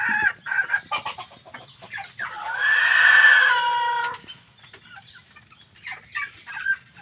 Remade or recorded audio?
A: recorded